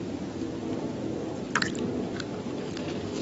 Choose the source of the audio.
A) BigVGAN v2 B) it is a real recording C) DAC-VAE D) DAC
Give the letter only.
B